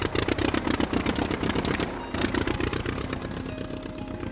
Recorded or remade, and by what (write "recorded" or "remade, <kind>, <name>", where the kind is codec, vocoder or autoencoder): recorded